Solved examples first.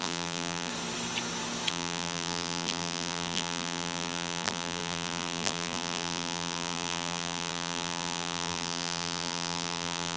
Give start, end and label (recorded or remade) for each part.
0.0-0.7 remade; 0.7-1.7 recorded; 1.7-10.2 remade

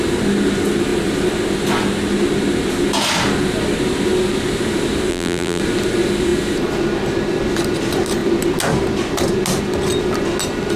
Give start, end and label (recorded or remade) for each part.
0.0-5.1 recorded; 5.1-5.6 remade; 5.6-10.8 recorded

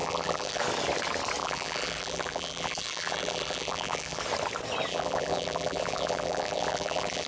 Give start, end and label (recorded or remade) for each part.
0.0-0.6 remade; 0.6-1.4 recorded; 1.4-4.2 remade; 4.2-4.9 recorded; 4.9-7.3 remade

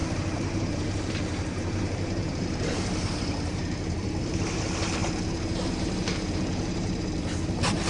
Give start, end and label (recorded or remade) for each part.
0.0-4.6 remade; 4.6-5.0 recorded; 5.0-7.1 remade; 7.1-7.9 recorded

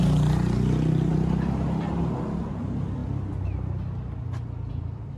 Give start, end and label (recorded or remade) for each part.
0.0-1.1 recorded; 1.1-1.9 remade; 1.9-5.2 recorded